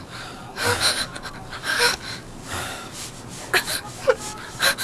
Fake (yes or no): yes